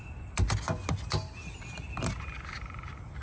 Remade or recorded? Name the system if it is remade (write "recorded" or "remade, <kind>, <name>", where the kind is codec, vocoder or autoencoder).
recorded